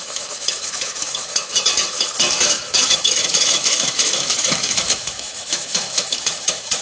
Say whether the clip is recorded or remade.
remade